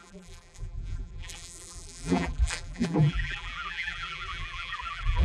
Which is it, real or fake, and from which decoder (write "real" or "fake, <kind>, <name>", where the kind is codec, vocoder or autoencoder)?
fake, vocoder, BigVGAN v2